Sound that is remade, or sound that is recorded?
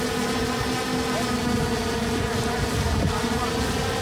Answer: recorded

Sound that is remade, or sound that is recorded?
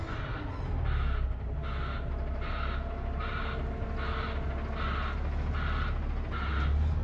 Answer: recorded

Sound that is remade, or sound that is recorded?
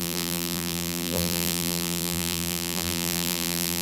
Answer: remade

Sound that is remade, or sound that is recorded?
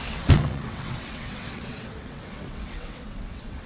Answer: remade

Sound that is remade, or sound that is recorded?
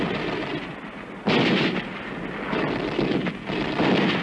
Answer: recorded